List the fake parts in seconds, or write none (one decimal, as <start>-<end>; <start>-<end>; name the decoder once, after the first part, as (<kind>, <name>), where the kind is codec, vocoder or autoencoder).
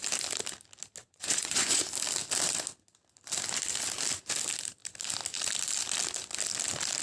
1.0-1.8 (vocoder, Vocos)